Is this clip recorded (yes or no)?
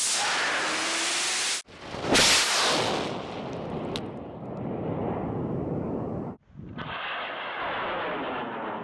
yes